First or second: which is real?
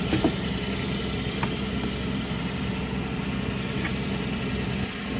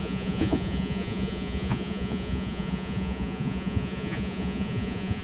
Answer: first